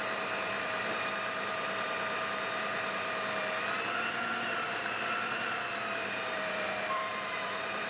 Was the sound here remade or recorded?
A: remade